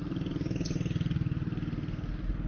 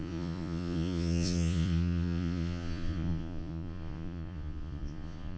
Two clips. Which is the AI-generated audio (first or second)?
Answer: second